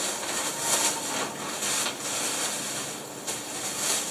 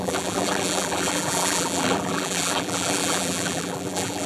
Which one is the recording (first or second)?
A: first